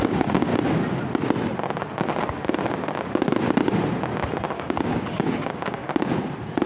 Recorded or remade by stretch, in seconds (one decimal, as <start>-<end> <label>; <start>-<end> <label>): 0.0-0.5 remade; 0.5-4.5 recorded; 4.5-5.8 remade; 5.8-6.7 recorded